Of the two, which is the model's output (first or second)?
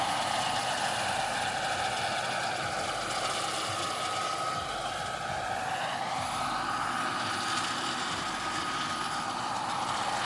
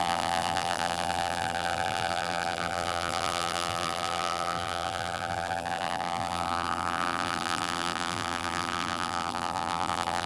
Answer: second